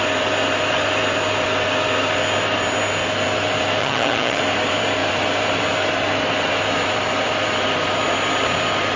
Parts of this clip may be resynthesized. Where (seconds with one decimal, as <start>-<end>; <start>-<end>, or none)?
3.8-4.4